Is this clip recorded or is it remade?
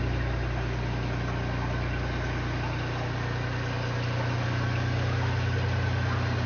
recorded